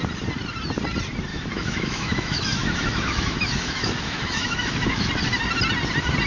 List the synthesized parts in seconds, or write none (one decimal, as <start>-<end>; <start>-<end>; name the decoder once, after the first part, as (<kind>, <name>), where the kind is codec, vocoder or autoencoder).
1.3-5.1 (autoencoder, DAC-VAE)